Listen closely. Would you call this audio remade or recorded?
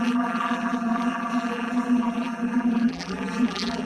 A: remade